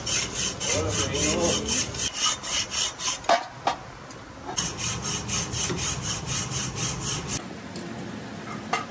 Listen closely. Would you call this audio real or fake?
real